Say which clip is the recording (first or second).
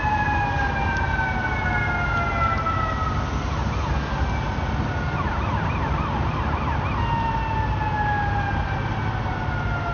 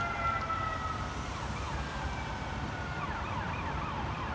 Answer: first